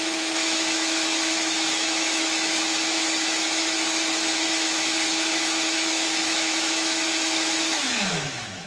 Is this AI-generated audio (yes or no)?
yes